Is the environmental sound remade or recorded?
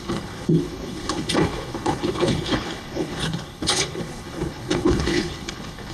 remade